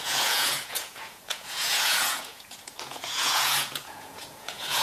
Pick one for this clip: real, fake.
fake